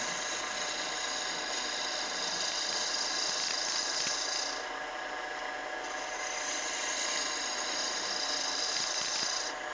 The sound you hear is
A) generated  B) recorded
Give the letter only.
B